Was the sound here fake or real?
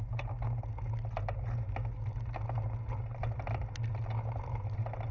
real